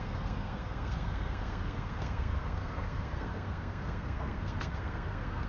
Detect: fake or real fake